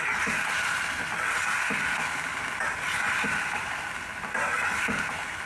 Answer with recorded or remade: recorded